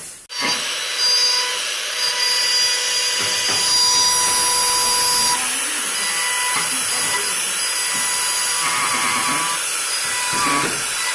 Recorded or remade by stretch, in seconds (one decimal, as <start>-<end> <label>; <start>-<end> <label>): 0.0-1.5 recorded; 1.5-2.5 remade; 2.5-11.1 recorded